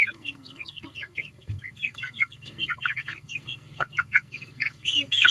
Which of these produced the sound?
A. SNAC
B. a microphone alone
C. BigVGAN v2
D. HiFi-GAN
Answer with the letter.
A